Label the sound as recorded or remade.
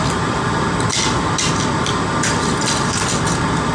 recorded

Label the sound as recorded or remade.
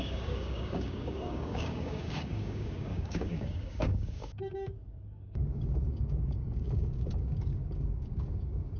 remade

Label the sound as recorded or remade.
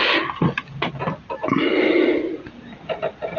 recorded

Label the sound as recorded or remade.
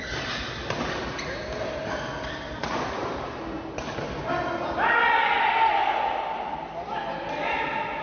recorded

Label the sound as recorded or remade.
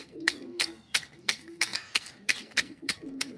remade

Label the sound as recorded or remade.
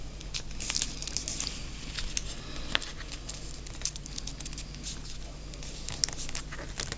recorded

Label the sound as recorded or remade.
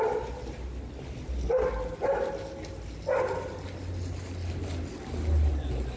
recorded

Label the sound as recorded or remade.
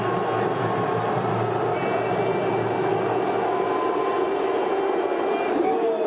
recorded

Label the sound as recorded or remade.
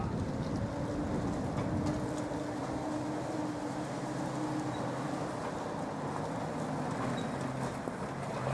recorded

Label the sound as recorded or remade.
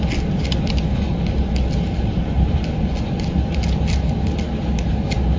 recorded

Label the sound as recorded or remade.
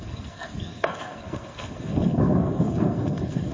remade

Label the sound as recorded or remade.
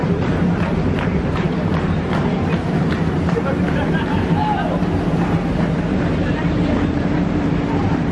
remade